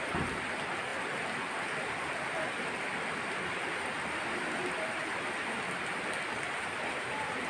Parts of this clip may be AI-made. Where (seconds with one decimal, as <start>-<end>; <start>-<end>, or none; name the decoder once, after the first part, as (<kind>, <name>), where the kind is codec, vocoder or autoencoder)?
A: none